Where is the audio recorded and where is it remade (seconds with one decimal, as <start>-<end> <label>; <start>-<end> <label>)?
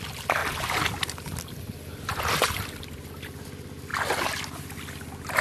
0.0-5.4 recorded